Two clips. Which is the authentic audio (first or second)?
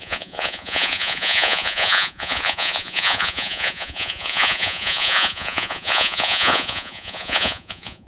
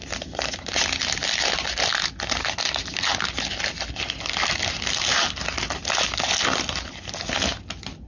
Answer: second